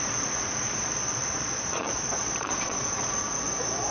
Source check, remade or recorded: remade